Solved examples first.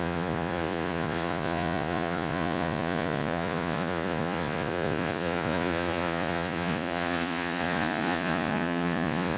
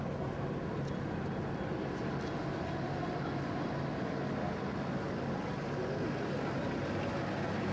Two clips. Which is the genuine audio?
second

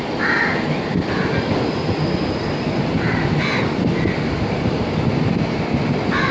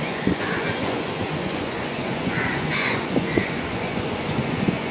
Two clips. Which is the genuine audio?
first